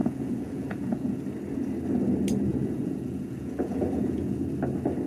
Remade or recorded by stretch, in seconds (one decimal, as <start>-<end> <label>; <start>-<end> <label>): 0.0-1.2 remade; 1.2-2.5 recorded; 2.5-4.3 remade; 4.3-5.1 recorded